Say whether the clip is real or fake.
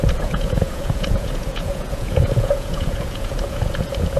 fake